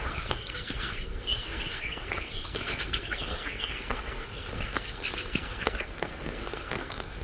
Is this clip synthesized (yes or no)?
yes